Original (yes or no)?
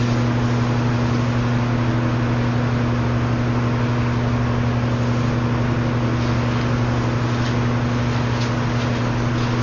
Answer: yes